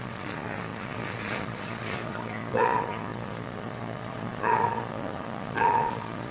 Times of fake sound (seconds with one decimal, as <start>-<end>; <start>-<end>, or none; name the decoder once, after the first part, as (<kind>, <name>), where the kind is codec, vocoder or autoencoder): 0.0-6.3 (vocoder, Vocos)